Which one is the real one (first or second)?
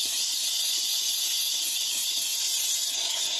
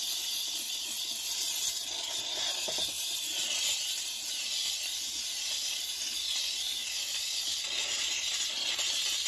second